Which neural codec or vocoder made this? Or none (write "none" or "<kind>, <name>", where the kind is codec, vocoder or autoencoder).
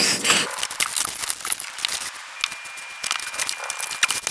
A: none